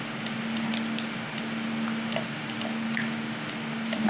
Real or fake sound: real